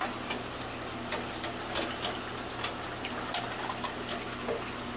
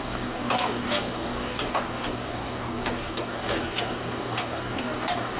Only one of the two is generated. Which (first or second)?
second